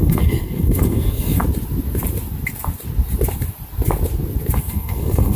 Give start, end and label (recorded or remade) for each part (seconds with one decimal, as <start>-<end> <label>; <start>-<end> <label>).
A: 0.0-1.4 remade; 1.4-4.6 recorded; 4.6-5.4 remade